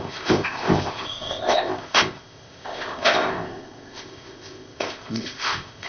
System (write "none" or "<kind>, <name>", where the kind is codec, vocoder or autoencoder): codec, ZipCodec